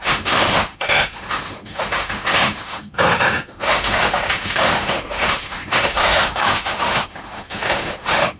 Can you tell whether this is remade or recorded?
remade